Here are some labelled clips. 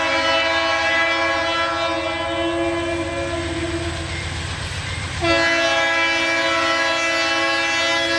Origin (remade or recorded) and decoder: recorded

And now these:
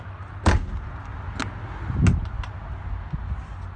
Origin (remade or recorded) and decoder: recorded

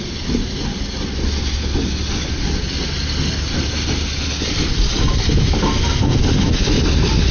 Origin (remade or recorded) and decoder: recorded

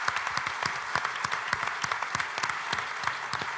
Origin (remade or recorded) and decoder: recorded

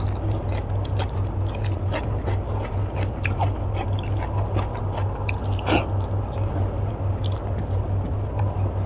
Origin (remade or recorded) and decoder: recorded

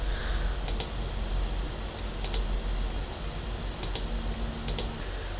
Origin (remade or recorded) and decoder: recorded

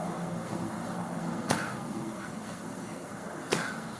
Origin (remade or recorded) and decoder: remade, codec, SNAC